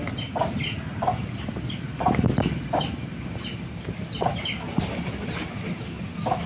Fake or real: real